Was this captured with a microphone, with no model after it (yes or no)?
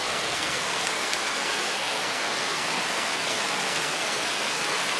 no